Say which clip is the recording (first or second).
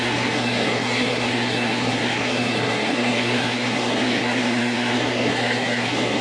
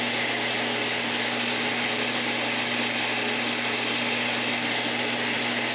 second